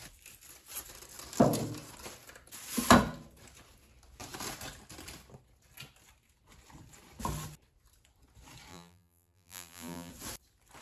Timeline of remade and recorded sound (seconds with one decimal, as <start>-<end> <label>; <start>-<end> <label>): 0.0-8.7 recorded; 8.7-10.1 remade; 10.1-10.8 recorded